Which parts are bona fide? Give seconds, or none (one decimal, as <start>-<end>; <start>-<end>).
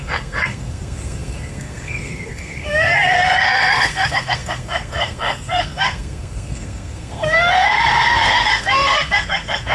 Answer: none